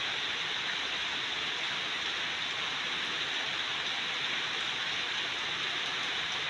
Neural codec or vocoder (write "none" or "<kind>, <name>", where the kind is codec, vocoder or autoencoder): none